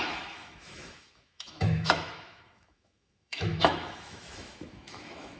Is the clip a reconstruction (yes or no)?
yes